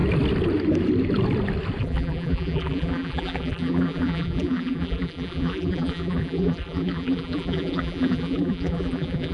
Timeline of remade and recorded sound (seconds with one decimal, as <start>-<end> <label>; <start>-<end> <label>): 0.0-1.8 recorded; 1.8-9.3 remade